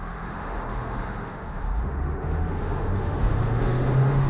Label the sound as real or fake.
fake